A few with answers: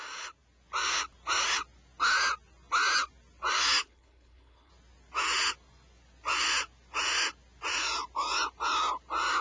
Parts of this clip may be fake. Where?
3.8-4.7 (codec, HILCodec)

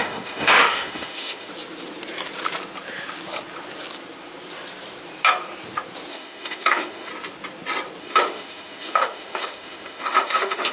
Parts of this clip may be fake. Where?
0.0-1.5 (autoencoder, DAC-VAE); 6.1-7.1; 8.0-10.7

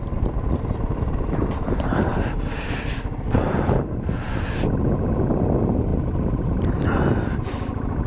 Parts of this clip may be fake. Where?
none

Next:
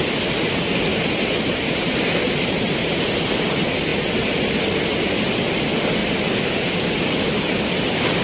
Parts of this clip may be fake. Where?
0.9-3.0 (vocoder, BigVGAN v2); 6.0-6.7